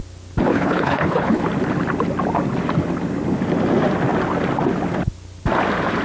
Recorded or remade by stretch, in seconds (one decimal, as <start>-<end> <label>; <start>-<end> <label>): 0.0-0.5 recorded; 0.5-1.4 remade; 1.4-6.0 recorded